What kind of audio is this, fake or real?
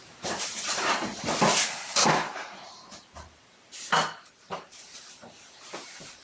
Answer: fake